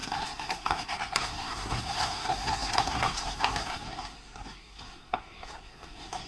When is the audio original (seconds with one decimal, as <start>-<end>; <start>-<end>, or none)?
none